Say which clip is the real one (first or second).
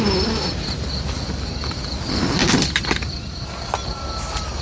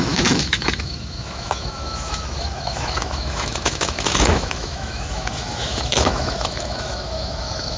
first